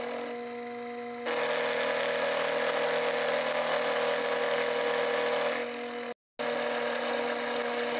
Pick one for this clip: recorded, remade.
recorded